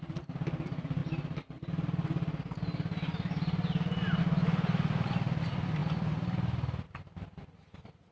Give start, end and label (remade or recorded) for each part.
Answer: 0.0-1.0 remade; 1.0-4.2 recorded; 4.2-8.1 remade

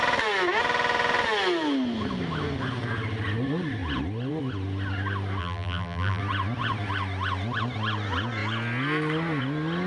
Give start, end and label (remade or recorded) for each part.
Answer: 0.0-5.4 recorded; 5.4-6.2 remade; 6.2-9.9 recorded

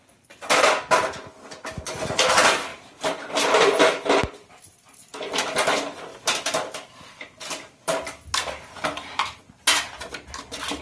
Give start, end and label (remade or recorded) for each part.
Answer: 0.0-2.7 recorded; 2.7-4.5 remade; 4.5-6.1 recorded; 6.1-9.4 remade; 9.4-10.8 recorded

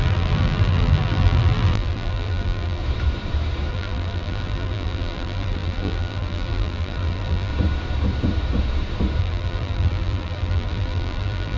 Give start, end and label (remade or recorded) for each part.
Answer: 0.0-2.8 remade; 2.8-3.7 recorded; 3.7-7.5 remade; 7.5-9.2 recorded; 9.2-11.6 remade

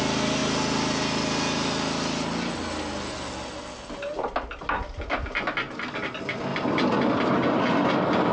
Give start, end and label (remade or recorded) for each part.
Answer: 0.0-6.5 recorded; 6.5-7.1 remade; 7.1-8.3 recorded

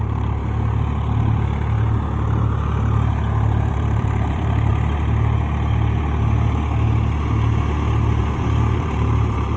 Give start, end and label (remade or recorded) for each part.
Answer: 0.0-0.4 remade; 0.4-3.7 recorded; 3.7-4.7 remade; 4.7-8.2 recorded; 8.2-9.6 remade